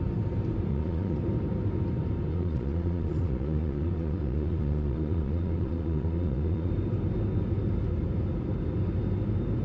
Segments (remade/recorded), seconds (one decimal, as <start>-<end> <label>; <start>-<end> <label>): 0.0-0.7 recorded; 0.7-1.2 remade; 1.2-2.3 recorded; 2.3-6.7 remade; 6.7-9.6 recorded